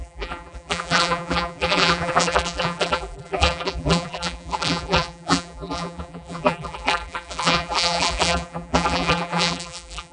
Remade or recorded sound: remade